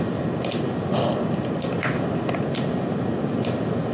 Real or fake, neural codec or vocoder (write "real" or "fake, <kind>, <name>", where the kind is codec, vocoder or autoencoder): real